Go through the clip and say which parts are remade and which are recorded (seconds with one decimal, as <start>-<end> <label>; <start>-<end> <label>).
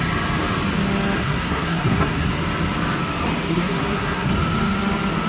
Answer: 0.0-1.2 recorded; 1.2-2.3 remade; 2.3-3.5 recorded; 3.5-4.3 remade; 4.3-5.3 recorded